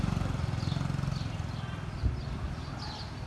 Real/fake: real